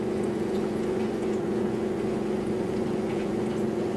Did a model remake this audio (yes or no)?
yes